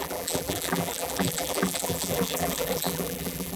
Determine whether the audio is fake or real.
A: fake